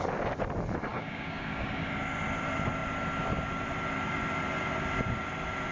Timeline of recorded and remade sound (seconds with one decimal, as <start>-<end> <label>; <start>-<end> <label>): 0.0-0.9 recorded; 0.9-1.9 remade; 1.9-5.7 recorded